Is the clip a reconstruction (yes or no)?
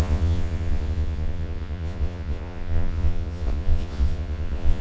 yes